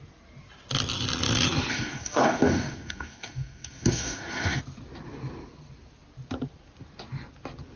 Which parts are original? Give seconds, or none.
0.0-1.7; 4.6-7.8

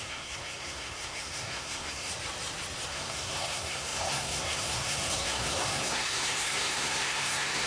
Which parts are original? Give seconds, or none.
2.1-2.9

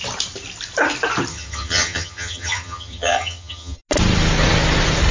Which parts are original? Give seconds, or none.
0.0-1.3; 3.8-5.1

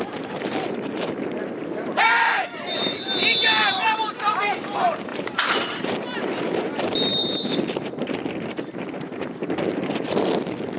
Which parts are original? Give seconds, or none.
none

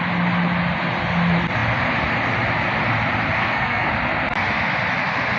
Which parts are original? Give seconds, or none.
0.0-3.4; 3.9-5.4

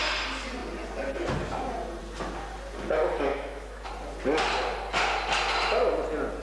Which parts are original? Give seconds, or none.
0.0-3.3; 3.9-6.4